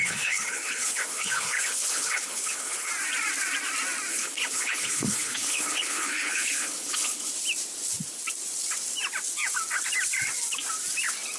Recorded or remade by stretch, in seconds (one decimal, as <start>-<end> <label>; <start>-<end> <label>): 0.0-2.9 remade; 2.9-4.1 recorded; 4.1-7.3 remade; 7.3-11.4 recorded